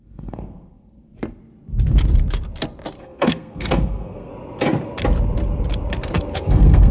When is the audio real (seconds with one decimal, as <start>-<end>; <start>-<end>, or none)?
1.1-3.0; 4.3-6.4